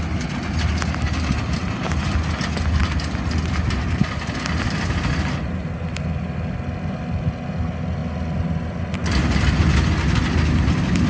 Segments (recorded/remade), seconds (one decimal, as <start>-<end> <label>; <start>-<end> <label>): 0.0-11.1 recorded